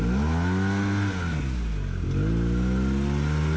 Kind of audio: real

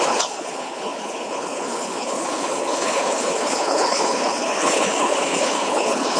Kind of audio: fake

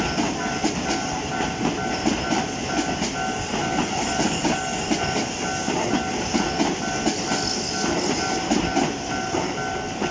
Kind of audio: real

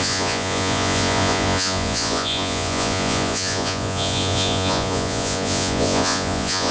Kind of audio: fake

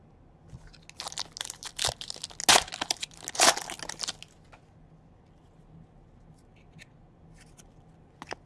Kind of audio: real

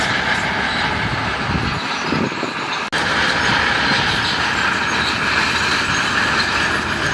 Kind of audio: real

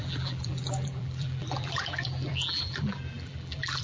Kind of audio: fake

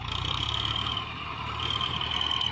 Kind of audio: fake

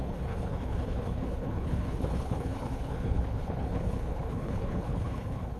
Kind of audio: fake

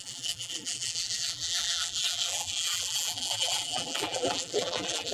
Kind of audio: fake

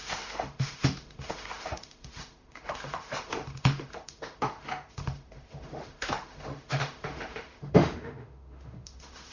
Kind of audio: fake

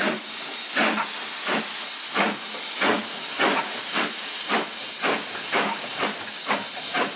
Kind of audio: real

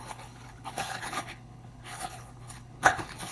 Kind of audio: fake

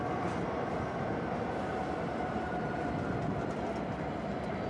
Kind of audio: real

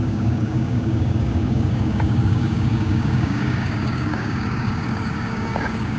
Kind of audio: fake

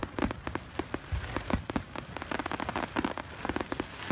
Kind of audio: real